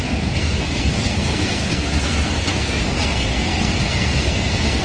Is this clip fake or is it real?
fake